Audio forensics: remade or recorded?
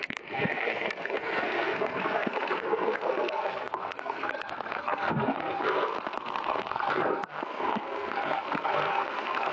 remade